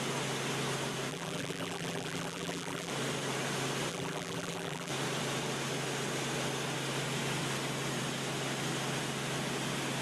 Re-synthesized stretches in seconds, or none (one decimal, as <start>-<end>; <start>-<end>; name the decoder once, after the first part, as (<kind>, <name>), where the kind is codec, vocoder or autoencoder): 1.1-2.9 (vocoder, BigVGAN v2); 3.9-4.9